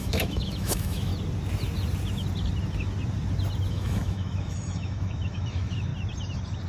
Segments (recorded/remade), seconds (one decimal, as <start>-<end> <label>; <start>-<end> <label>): 0.0-1.1 remade; 1.1-3.7 recorded; 3.7-5.9 remade; 5.9-6.7 recorded